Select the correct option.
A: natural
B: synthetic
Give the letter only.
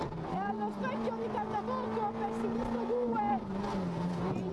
A